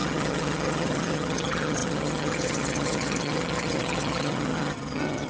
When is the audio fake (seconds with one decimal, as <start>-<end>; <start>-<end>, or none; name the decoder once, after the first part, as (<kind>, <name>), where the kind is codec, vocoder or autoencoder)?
0.0-5.3 (vocoder, HiFi-GAN)